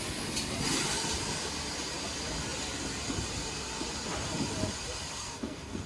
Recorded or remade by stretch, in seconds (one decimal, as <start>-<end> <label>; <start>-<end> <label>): 0.0-5.2 recorded; 5.2-5.9 remade